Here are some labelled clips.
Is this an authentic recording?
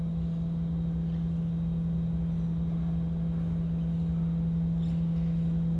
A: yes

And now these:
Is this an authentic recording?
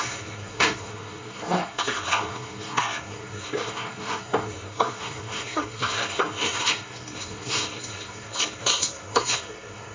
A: no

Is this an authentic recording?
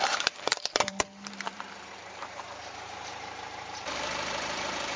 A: no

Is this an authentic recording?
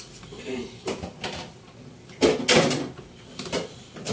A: yes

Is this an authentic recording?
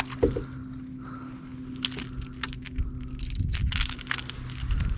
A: yes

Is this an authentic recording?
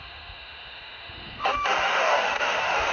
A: no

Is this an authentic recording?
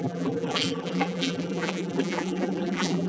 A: no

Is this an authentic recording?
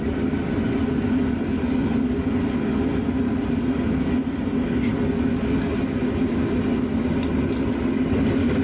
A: yes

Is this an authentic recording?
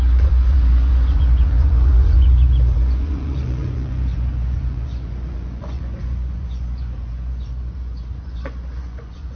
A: no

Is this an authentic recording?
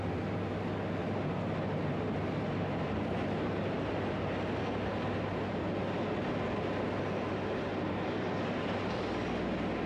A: yes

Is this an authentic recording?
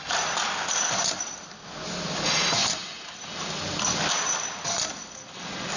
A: yes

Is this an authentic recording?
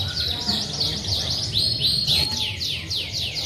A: no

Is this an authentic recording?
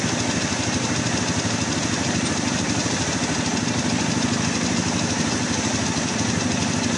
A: yes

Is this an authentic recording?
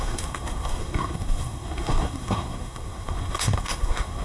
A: no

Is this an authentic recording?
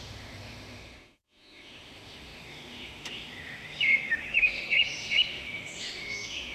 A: no